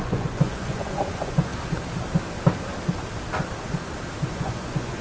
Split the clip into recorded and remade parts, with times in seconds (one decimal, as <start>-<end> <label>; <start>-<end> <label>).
0.0-1.5 remade; 1.5-4.3 recorded; 4.3-5.0 remade